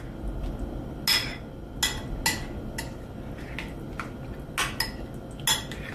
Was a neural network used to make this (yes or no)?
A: no